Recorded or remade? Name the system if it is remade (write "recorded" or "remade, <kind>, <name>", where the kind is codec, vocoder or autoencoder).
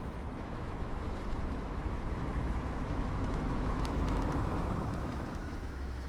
remade, autoencoder, DAC-VAE